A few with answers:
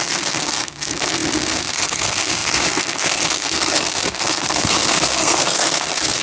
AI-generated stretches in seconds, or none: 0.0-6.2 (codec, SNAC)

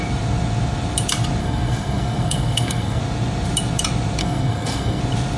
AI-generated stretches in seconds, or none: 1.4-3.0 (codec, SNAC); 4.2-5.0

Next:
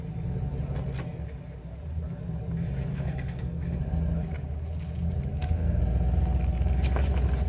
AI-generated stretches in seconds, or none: 2.9-3.8 (codec, SNAC); 5.3-5.8

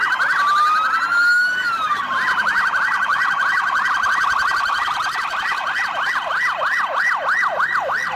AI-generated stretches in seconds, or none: none